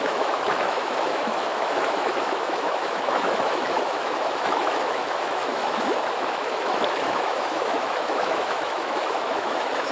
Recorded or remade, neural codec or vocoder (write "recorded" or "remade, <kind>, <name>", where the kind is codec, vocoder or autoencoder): remade, autoencoder, DAC-VAE